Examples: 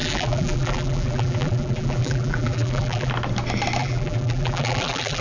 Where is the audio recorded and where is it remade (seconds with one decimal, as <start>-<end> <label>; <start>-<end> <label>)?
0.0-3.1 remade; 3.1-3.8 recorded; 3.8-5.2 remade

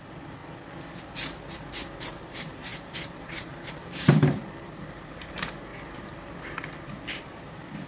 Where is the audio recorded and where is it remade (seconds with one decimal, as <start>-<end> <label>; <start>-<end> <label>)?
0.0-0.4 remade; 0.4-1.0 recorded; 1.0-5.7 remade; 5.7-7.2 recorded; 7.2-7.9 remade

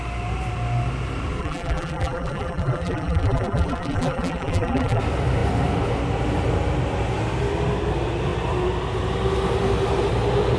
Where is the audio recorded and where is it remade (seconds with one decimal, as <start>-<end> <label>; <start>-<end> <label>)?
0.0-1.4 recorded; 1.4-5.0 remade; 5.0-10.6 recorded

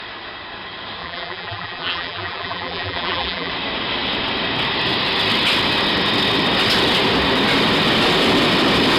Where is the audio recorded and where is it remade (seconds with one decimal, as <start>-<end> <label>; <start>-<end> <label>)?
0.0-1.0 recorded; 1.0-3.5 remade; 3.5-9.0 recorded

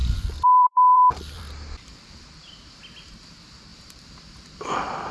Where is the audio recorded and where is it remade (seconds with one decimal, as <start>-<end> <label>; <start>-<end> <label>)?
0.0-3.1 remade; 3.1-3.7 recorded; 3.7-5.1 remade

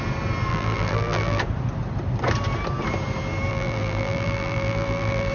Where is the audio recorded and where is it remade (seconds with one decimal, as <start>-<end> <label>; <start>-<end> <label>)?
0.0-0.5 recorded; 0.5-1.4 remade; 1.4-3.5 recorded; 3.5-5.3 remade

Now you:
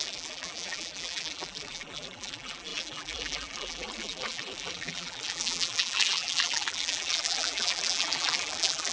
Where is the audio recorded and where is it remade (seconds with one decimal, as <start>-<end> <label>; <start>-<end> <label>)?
0.0-8.9 remade

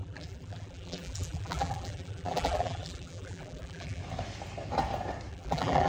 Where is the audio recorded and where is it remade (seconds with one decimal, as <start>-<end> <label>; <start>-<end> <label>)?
0.0-4.0 remade; 4.0-5.3 recorded; 5.3-5.9 remade